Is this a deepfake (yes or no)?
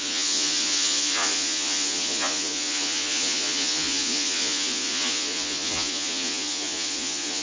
yes